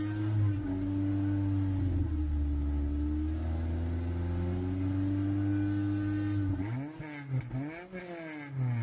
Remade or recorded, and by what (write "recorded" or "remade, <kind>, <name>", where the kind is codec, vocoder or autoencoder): recorded